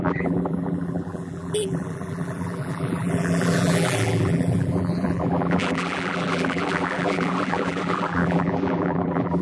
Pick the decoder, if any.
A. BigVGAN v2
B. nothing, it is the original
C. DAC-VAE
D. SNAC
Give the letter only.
A